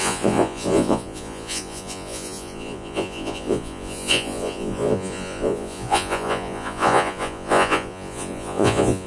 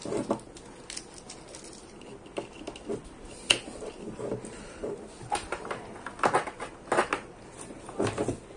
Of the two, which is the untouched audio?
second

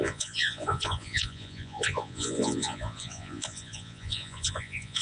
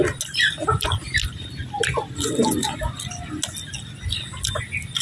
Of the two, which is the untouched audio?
second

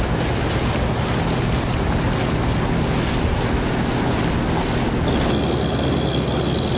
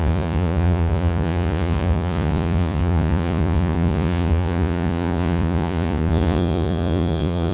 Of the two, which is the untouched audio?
first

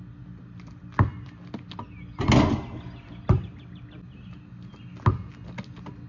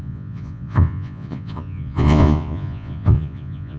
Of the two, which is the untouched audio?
first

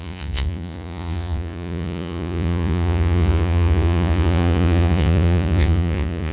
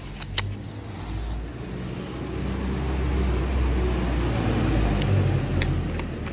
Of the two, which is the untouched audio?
second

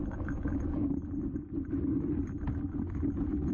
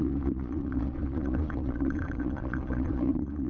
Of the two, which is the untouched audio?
first